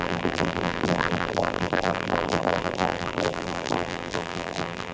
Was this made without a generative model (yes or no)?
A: no